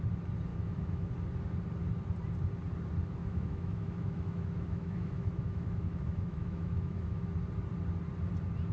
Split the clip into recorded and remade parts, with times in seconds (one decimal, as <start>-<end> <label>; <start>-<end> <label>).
0.0-0.5 recorded; 0.5-1.1 remade; 1.1-3.2 recorded; 3.2-7.3 remade; 7.3-8.7 recorded